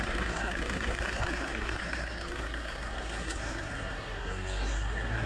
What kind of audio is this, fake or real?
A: fake